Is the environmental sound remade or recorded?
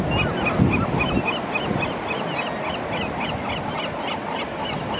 recorded